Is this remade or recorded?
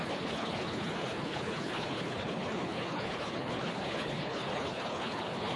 remade